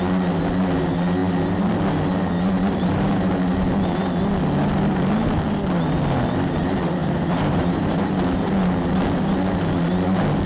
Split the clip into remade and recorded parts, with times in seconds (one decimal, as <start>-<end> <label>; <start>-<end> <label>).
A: 0.0-7.0 recorded; 7.0-8.1 remade; 8.1-10.5 recorded